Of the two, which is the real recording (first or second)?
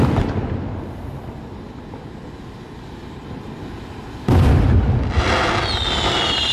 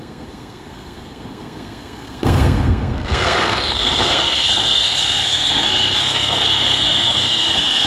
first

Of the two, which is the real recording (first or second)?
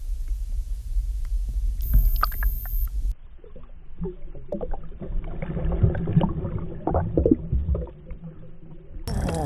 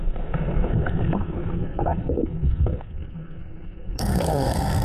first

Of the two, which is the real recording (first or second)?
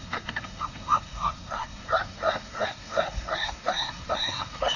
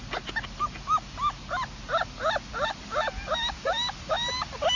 second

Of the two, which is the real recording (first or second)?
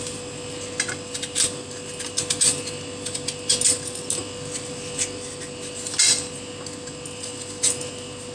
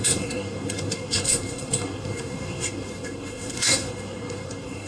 first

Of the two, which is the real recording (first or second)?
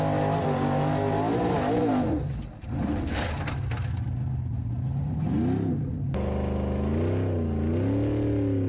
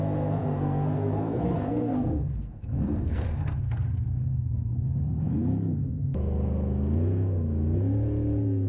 first